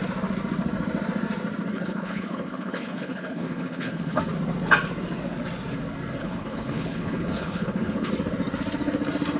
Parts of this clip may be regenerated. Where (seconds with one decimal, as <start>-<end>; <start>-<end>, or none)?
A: 1.7-4.2; 6.2-8.1